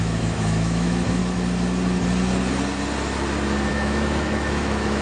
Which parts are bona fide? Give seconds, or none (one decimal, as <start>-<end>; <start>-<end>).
1.2-3.7